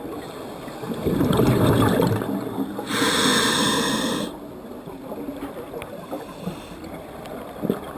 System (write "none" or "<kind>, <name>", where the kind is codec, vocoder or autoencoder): none